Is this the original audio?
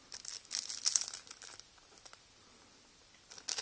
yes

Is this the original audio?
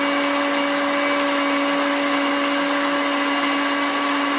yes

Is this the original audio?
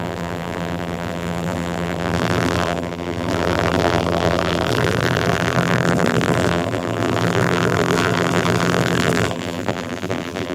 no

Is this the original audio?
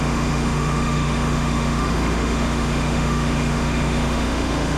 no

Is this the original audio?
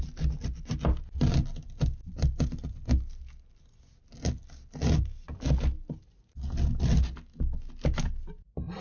yes